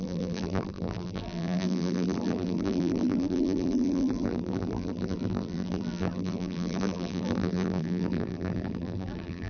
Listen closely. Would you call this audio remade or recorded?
remade